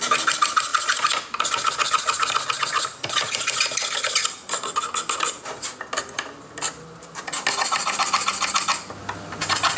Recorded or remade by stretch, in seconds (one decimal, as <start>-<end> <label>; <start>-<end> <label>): 0.0-9.8 recorded